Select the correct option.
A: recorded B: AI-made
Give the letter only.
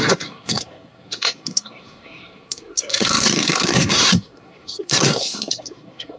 B